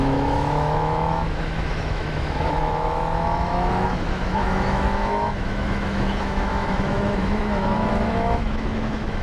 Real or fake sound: fake